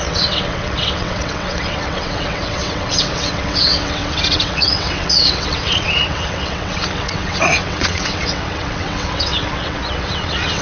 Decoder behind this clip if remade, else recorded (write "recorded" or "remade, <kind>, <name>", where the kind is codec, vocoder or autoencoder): remade, vocoder, WaveNeXt